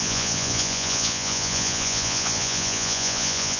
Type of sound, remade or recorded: remade